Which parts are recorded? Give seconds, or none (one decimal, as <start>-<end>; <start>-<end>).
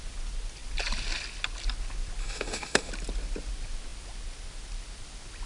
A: 0.0-2.2; 2.9-5.5